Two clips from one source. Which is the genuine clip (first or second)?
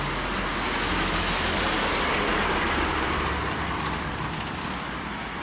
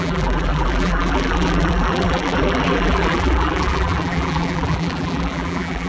first